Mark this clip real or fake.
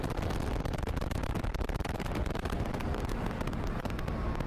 real